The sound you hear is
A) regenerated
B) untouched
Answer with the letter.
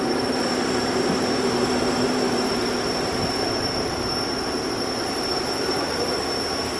A